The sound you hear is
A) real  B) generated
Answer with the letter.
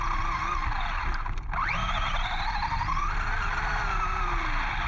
A